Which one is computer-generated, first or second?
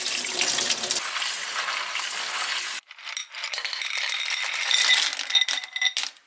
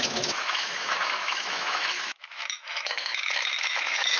second